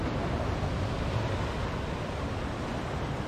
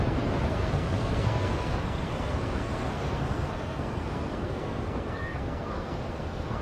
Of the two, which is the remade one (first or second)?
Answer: second